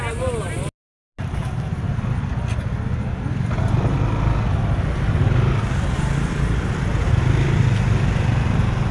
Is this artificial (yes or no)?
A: no